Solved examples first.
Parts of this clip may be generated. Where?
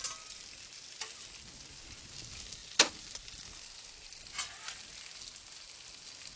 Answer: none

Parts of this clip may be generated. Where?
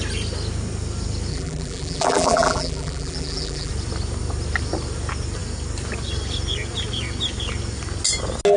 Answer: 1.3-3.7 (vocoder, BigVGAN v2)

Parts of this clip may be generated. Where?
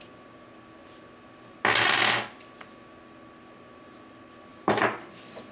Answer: 4.5-5.5 (vocoder, BigVGAN v2)